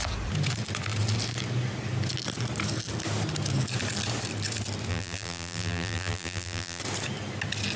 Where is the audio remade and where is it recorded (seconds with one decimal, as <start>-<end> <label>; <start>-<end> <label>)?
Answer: 0.0-4.9 recorded; 4.9-6.8 remade; 6.8-7.8 recorded